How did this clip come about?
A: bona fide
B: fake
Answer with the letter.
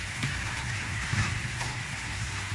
B